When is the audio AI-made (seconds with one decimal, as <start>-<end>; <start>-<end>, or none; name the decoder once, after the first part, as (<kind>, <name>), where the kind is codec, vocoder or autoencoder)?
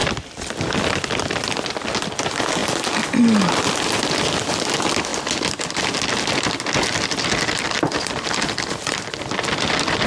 none